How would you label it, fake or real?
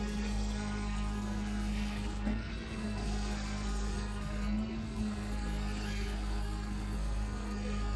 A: fake